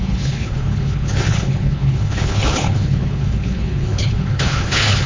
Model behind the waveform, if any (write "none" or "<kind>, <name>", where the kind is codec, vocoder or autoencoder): codec, HILCodec